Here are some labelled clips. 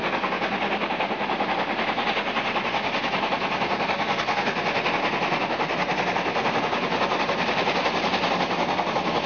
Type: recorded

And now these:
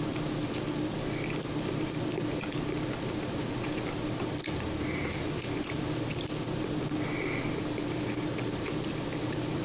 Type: recorded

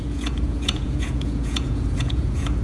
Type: remade